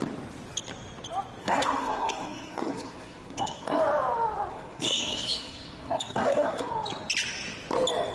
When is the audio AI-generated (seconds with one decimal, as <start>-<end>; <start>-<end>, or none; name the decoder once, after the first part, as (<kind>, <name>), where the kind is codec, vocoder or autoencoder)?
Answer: 1.4-3.8 (codec, SNAC); 4.5-6.7